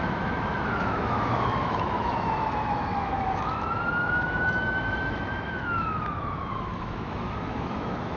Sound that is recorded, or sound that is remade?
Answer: remade